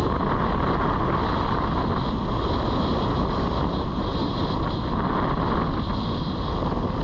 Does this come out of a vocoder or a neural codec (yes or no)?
no